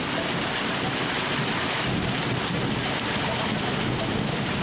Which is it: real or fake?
real